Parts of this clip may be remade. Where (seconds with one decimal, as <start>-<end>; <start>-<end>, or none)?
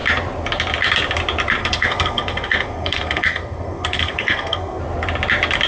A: 1.6-4.8